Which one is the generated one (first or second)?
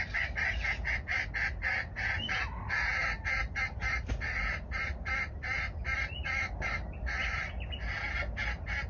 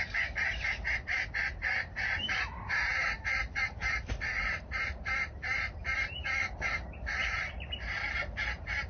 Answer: second